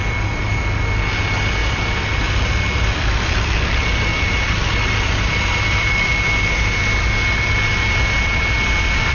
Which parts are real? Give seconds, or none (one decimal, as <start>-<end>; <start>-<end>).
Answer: 0.0-1.6; 6.1-9.1